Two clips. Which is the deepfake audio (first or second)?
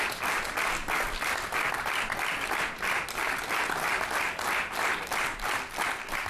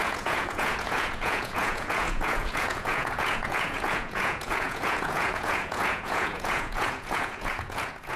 second